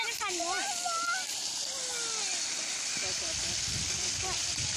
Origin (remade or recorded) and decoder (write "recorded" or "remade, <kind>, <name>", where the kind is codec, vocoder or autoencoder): recorded